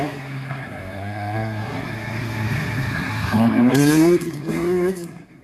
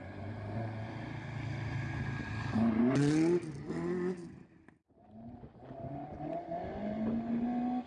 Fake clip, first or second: first